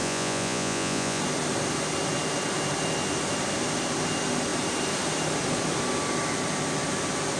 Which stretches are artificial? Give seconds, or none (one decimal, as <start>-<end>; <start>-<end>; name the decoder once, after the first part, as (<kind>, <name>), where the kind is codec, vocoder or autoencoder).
0.0-1.2 (vocoder, Vocos)